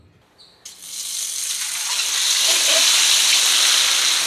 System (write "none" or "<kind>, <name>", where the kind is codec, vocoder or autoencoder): none